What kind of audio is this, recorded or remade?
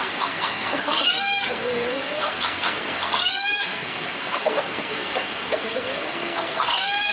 remade